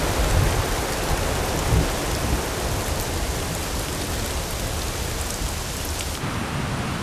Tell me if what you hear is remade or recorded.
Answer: recorded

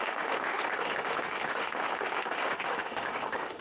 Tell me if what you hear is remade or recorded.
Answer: remade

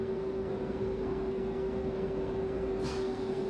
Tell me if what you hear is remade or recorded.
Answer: remade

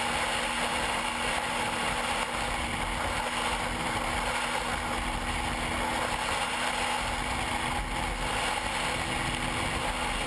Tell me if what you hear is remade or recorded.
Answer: recorded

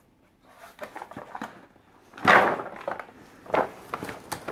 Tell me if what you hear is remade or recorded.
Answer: recorded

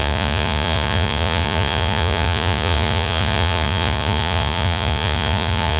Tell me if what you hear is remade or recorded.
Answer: remade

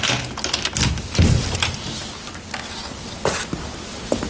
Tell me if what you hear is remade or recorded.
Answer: recorded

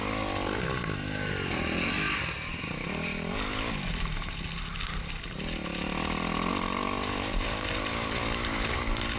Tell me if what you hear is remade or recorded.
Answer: recorded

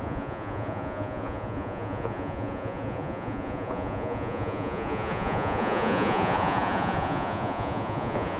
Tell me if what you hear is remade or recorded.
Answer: remade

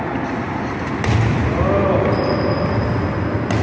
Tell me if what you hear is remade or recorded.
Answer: recorded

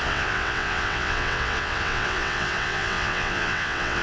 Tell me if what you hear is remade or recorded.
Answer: remade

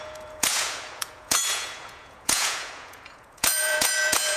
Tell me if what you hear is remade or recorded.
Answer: remade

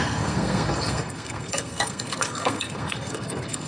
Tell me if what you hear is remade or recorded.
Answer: remade